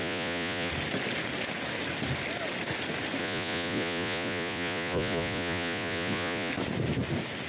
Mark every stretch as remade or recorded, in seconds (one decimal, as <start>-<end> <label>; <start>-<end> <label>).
0.0-0.7 remade; 0.7-3.2 recorded; 3.2-6.5 remade; 6.5-7.5 recorded